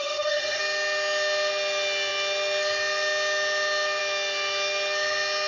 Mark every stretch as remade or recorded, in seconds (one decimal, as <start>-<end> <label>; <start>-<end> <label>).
0.0-0.6 remade; 0.6-5.5 recorded